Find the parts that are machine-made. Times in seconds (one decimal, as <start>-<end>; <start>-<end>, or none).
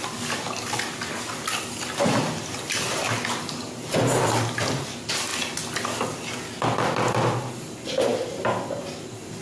none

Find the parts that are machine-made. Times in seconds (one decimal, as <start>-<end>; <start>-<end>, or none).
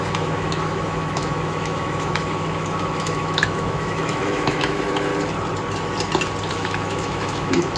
0.0-5.1; 6.5-7.8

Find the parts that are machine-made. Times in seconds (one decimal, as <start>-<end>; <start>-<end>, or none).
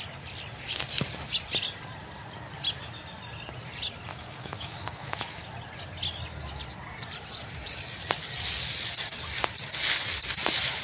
4.1-5.4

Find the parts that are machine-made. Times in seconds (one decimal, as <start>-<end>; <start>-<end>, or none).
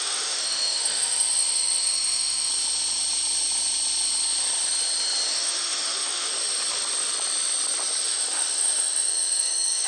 0.0-2.5; 5.3-6.3; 8.0-9.9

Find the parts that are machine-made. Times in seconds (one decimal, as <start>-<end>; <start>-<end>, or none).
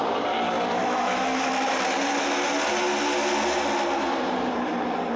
0.8-1.5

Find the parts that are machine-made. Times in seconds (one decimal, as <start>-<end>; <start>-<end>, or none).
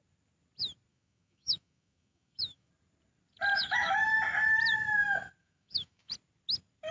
0.9-2.7; 3.5-4.1; 5.4-6.1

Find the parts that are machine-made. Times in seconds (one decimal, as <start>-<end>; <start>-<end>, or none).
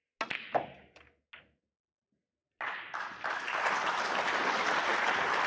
none